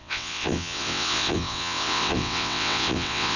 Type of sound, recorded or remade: remade